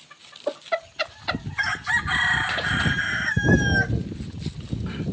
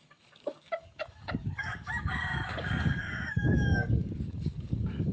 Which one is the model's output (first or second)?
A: second